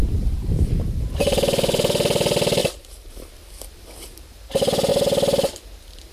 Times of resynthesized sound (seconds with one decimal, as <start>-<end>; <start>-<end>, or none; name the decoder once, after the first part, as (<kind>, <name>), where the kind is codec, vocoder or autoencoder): 0.0-1.0 (vocoder, BigVGAN v2); 2.6-3.1